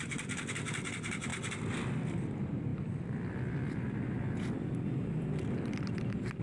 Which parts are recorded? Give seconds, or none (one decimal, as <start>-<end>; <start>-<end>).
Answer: 0.0-6.4